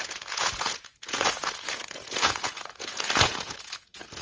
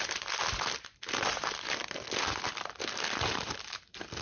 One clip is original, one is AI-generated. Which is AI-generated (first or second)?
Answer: first